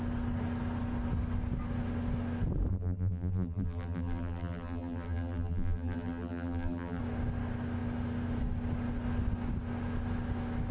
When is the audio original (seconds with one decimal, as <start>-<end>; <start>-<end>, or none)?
0.0-2.7; 7.0-10.7